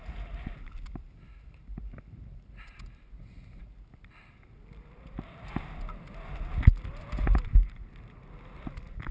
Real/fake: real